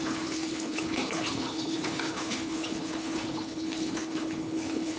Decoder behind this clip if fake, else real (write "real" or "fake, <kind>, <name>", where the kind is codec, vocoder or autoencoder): fake, codec, HILCodec